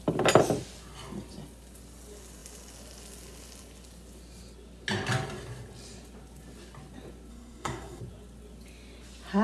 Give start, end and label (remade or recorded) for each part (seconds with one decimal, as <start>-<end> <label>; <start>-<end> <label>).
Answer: 0.0-7.3 recorded; 7.3-8.0 remade; 8.0-9.4 recorded